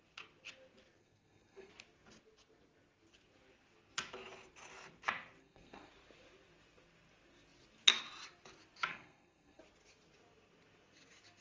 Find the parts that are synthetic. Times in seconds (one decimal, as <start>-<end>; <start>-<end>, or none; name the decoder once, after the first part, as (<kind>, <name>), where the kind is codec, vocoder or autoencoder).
1.0-1.7 (codec, SNAC); 5.4-5.9; 8.9-9.6